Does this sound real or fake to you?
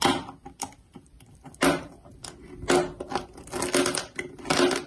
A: real